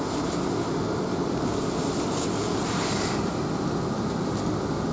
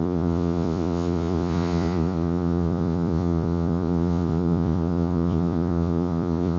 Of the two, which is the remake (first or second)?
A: second